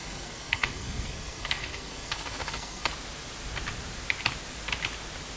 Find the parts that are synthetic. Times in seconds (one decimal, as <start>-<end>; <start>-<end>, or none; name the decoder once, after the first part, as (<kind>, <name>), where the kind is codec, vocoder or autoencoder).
0.0-2.9 (codec, SNAC)